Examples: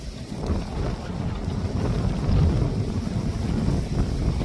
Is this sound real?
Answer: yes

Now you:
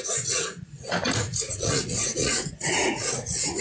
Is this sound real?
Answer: no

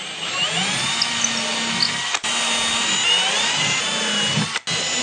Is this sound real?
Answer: yes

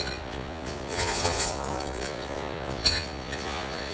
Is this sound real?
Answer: no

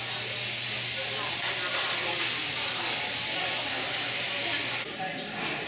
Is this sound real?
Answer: yes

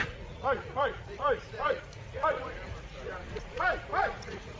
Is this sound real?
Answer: no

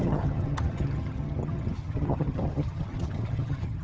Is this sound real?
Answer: no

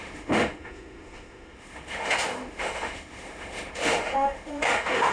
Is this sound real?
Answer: no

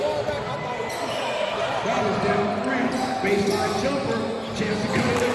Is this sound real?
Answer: yes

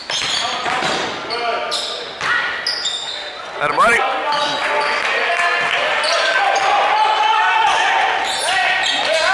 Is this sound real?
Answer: yes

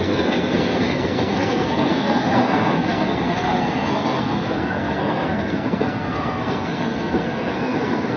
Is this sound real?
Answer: no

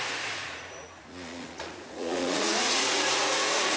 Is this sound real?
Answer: no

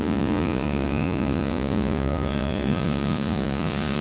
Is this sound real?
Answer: no